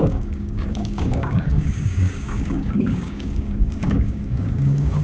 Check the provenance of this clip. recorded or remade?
remade